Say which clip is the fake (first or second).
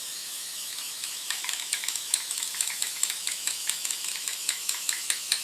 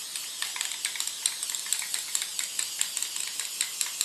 first